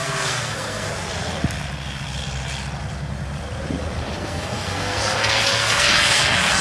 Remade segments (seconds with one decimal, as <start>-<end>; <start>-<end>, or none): 0.0-0.9; 4.1-6.6